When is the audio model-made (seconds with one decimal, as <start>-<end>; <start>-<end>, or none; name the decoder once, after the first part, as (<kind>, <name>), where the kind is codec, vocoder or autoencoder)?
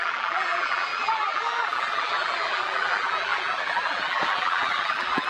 0.0-5.3 (vocoder, BigVGAN v2)